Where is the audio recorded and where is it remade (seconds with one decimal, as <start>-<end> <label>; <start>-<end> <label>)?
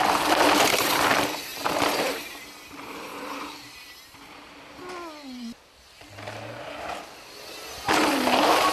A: 0.0-8.7 recorded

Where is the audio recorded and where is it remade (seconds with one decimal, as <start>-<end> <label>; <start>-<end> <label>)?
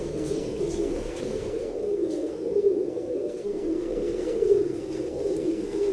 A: 0.0-5.9 remade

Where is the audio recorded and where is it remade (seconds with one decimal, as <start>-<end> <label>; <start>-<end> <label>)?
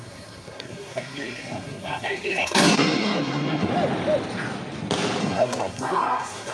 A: 0.0-3.7 remade; 3.7-5.2 recorded; 5.2-6.5 remade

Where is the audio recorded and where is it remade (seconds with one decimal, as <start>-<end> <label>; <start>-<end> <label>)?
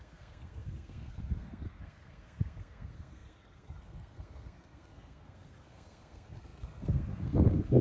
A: 0.0-7.8 remade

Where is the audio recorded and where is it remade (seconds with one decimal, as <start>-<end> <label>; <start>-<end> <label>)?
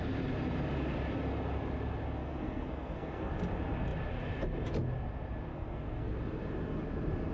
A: 0.0-2.2 recorded; 2.2-3.3 remade; 3.3-5.5 recorded; 5.5-6.1 remade; 6.1-7.3 recorded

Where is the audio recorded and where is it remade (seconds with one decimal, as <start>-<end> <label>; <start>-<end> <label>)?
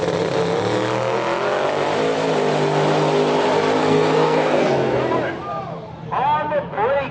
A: 0.0-3.8 recorded; 3.8-5.0 remade; 5.0-7.1 recorded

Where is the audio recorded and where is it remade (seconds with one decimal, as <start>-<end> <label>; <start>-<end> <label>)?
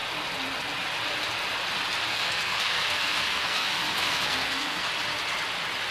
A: 0.0-2.1 recorded; 2.1-4.9 remade; 4.9-5.9 recorded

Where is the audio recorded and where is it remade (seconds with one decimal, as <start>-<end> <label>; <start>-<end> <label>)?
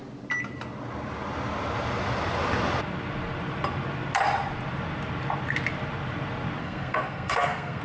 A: 0.0-6.6 recorded; 6.6-7.8 remade